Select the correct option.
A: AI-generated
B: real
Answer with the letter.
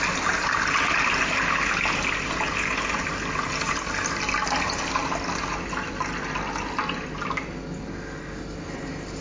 B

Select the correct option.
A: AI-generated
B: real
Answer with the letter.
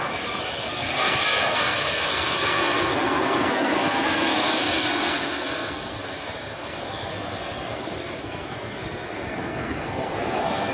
A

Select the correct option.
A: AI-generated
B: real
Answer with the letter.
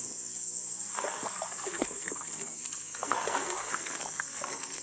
A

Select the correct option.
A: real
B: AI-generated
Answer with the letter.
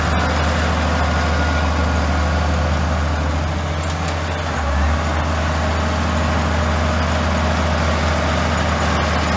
A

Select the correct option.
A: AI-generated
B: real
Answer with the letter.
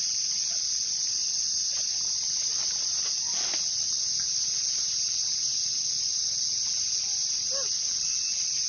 B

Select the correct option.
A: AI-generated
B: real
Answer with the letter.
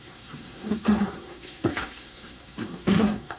A